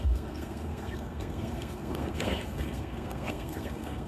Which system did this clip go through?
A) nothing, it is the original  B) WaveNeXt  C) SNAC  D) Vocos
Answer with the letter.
C